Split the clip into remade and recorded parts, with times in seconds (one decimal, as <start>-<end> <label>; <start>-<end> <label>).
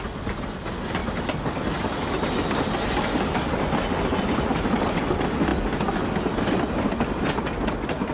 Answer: 0.0-8.1 recorded